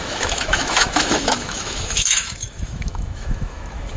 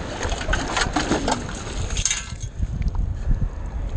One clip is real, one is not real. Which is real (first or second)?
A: second